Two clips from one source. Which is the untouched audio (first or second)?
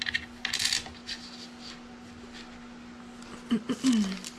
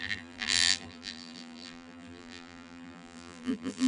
first